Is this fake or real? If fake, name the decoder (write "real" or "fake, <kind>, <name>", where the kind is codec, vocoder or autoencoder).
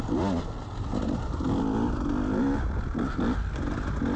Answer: real